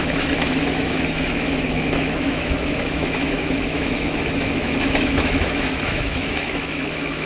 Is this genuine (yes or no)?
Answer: no